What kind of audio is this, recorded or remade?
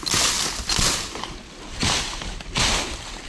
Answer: recorded